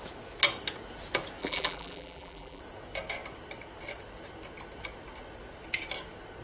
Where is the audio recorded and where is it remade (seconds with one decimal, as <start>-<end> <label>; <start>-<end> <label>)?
0.0-1.4 recorded; 1.4-2.6 remade; 2.6-6.4 recorded